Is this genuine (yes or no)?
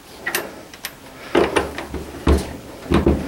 yes